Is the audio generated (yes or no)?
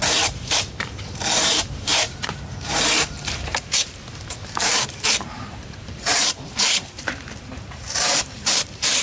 yes